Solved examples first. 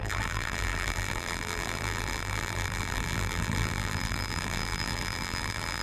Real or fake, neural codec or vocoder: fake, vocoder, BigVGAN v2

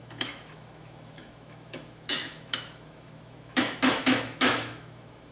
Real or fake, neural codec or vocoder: fake, autoencoder, DAC-VAE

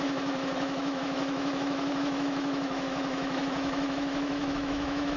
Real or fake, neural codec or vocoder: fake, autoencoder, DAC-VAE